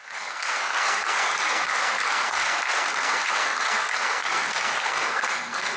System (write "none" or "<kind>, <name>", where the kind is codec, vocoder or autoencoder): codec, SNAC